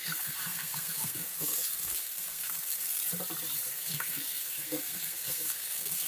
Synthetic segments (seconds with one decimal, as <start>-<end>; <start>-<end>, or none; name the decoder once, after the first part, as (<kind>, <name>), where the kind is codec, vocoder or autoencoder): 0.0-3.0 (codec, SNAC); 3.7-6.1